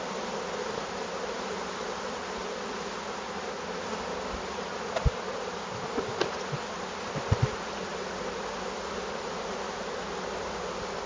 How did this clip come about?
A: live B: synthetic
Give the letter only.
A